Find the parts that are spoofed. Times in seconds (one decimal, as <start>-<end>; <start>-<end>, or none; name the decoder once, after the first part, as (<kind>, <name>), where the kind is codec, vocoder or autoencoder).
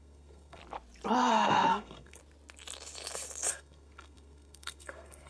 0.0-0.6 (codec, SNAC); 1.3-2.2; 3.5-5.3